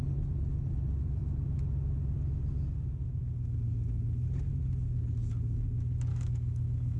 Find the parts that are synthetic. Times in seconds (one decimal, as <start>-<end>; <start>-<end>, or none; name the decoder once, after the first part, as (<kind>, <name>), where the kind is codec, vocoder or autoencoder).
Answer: 6.1-7.0 (codec, DAC)